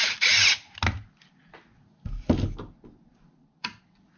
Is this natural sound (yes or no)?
yes